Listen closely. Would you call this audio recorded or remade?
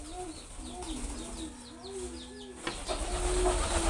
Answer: recorded